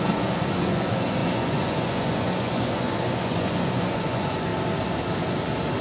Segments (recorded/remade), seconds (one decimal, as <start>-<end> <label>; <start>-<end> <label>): 0.0-4.5 remade; 4.5-5.8 recorded